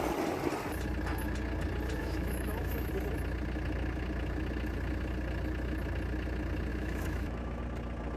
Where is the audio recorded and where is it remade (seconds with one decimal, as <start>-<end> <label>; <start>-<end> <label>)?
0.0-2.0 recorded; 2.0-2.9 remade; 2.9-6.7 recorded; 6.7-7.6 remade; 7.6-8.2 recorded